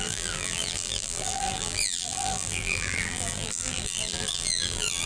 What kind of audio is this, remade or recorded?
remade